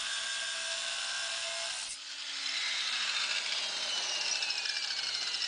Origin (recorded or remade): recorded